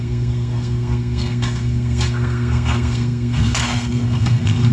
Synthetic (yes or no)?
yes